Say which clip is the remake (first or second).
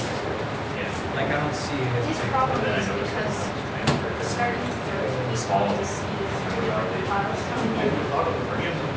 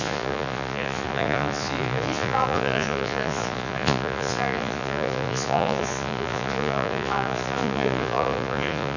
second